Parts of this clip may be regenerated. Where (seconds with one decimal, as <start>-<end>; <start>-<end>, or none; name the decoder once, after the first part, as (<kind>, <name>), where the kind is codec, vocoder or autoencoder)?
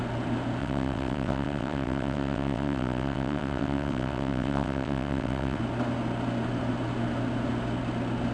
0.6-5.6 (vocoder, WaveNeXt)